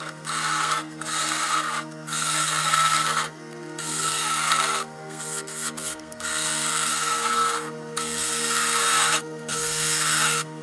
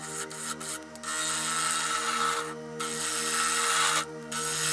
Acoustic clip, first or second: second